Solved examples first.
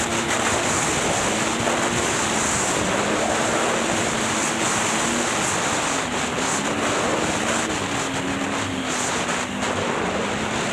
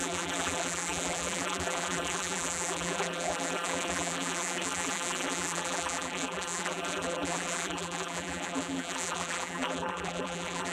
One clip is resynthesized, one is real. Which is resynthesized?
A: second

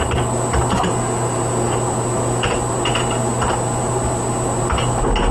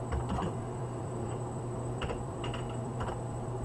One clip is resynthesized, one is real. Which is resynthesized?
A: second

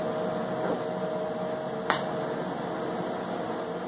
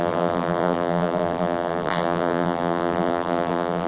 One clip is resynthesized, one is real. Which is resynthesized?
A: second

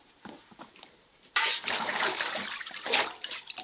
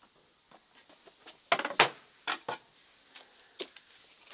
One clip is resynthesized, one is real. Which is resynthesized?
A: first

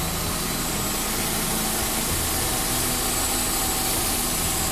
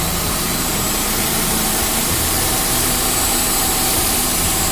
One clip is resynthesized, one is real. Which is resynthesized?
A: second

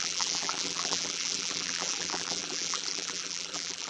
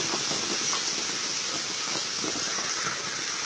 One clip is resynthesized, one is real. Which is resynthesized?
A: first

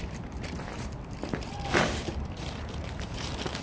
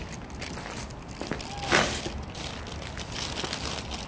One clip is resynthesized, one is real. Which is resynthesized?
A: first